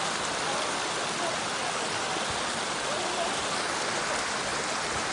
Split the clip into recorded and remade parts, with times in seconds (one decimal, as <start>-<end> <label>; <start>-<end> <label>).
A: 0.0-5.1 recorded